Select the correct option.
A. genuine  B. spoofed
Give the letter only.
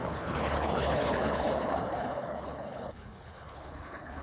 B